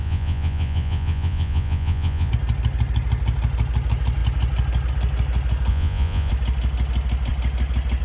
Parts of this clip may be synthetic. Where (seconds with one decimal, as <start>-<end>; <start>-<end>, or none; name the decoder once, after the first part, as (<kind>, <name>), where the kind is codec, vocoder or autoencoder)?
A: 0.0-2.3 (vocoder, Vocos); 5.7-6.3